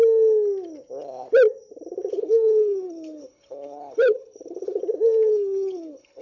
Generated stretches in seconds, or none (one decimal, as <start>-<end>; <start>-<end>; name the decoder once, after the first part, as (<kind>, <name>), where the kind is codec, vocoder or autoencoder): 2.1-4.8 (codec, HILCodec); 5.3-6.2